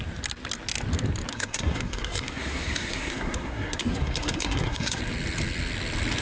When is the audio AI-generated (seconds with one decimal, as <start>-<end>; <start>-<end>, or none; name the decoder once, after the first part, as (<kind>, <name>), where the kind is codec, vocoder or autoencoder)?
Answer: 1.3-5.0 (codec, SNAC)